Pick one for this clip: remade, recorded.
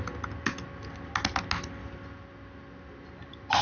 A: recorded